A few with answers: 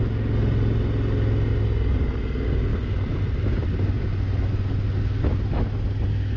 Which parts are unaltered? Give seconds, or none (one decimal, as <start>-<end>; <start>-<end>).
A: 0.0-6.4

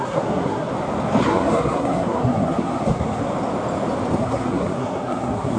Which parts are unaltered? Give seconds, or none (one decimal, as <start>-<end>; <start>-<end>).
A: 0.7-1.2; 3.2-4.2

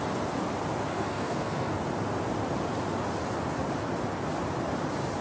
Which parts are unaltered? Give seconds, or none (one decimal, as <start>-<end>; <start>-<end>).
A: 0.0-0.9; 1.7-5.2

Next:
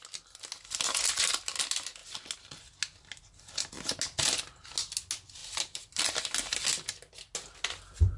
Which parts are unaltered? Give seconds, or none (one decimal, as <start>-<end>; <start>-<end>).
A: 0.0-8.2